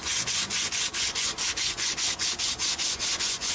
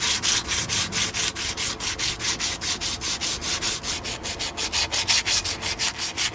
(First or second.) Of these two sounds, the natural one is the second